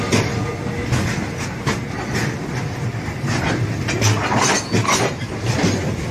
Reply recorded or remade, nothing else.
recorded